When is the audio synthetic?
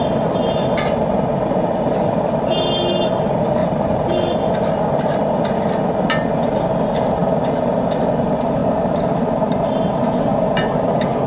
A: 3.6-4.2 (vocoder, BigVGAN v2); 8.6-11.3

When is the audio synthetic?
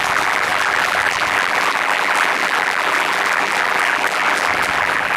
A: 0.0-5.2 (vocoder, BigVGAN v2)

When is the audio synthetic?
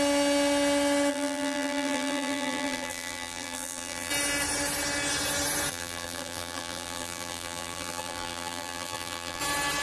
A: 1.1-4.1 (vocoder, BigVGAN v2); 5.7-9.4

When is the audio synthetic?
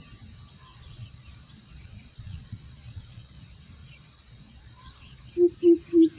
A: 0.7-3.4 (vocoder, Vocos); 3.8-5.3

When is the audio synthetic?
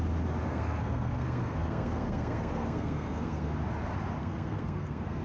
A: 0.5-3.6 (codec, SNAC); 4.2-5.2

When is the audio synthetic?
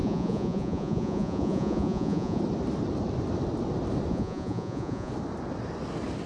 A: 0.0-2.4 (vocoder, Vocos); 4.1-5.1